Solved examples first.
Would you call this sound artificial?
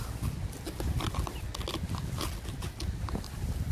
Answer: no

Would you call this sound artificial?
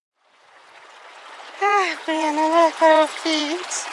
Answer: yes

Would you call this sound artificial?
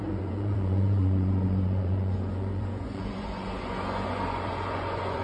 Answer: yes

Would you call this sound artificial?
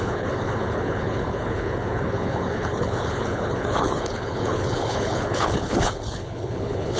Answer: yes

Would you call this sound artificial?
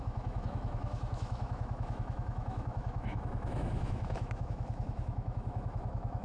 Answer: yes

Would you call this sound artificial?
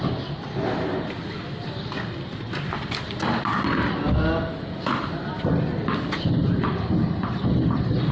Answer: no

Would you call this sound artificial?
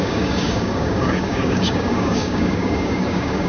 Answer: yes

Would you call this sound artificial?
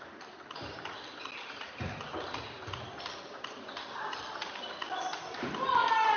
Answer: no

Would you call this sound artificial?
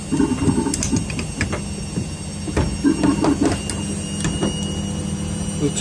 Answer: no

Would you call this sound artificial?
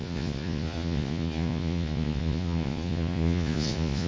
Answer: yes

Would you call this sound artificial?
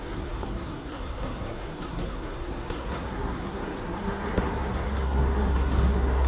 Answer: yes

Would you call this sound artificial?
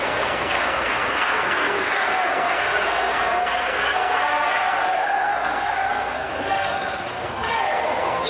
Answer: yes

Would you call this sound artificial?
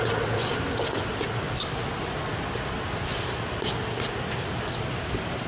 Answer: no